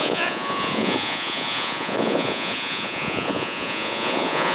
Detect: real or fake fake